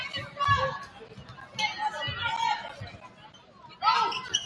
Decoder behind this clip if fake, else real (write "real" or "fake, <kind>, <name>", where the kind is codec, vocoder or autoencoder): real